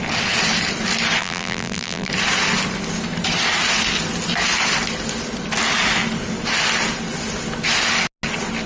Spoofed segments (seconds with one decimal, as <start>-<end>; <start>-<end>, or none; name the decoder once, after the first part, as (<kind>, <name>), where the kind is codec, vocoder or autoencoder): 1.2-2.1 (vocoder, BigVGAN v2)